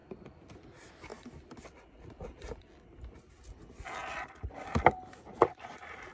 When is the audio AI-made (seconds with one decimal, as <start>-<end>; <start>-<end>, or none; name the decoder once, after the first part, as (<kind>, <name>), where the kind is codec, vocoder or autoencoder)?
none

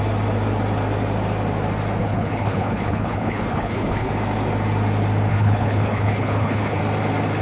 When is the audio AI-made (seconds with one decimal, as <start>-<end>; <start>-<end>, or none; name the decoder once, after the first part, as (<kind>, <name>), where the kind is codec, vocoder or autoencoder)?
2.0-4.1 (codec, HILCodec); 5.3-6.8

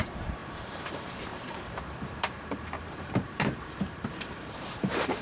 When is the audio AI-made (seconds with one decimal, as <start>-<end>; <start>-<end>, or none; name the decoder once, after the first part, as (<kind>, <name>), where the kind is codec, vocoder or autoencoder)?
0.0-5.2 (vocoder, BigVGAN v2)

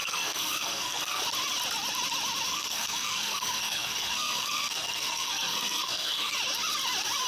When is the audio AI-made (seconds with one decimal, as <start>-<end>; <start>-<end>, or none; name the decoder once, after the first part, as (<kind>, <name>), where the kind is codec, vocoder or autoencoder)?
0.0-1.2 (codec, SNAC); 2.5-6.3